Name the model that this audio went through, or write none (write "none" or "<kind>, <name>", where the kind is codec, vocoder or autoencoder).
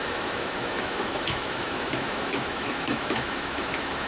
autoencoder, DAC-VAE